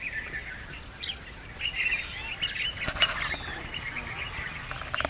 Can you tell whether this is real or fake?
real